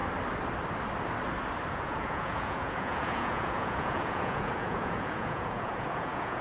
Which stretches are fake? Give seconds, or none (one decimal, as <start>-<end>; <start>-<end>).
1.7-6.4